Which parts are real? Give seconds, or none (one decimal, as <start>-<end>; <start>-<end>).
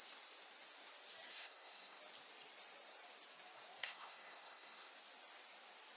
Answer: 0.0-1.3; 2.0-3.8; 4.9-6.0